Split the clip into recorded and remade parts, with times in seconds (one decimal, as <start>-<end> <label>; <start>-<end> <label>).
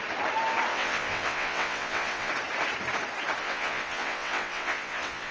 0.0-0.7 recorded; 0.7-2.3 remade; 2.3-3.4 recorded; 3.4-5.3 remade